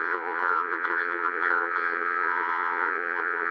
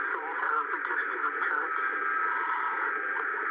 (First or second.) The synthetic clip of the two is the first